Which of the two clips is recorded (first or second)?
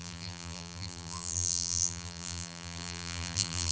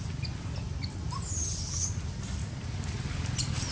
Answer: second